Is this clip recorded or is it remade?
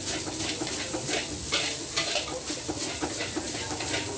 recorded